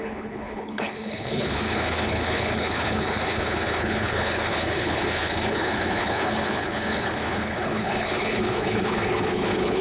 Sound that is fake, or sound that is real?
fake